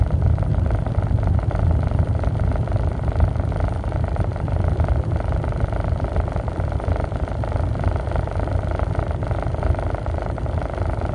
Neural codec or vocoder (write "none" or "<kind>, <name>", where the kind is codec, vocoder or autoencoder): none